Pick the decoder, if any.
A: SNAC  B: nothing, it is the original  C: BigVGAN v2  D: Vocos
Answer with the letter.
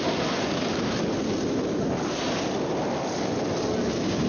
B